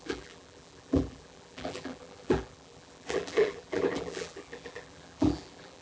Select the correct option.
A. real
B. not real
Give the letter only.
B